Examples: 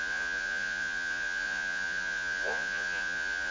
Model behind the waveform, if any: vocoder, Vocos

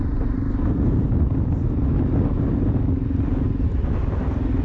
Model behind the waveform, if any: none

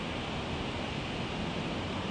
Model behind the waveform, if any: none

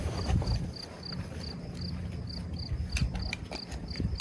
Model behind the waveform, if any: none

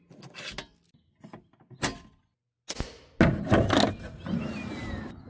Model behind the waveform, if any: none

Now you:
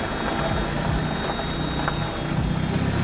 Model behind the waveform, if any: none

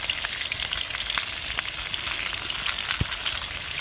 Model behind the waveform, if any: none